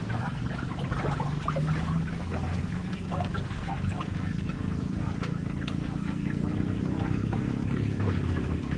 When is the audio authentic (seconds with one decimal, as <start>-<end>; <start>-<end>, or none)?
0.4-2.2